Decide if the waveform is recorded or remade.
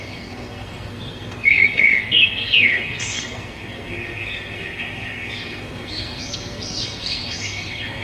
remade